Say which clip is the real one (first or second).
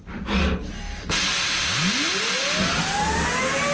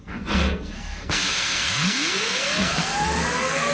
first